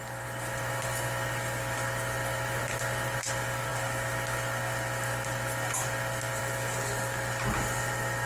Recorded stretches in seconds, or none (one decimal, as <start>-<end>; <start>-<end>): 0.0-8.3